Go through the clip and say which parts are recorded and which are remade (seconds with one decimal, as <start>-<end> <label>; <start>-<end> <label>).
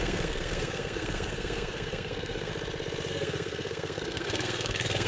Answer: 0.0-2.5 remade; 2.5-3.1 recorded; 3.1-5.1 remade